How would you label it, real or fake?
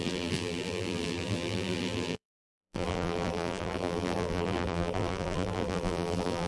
fake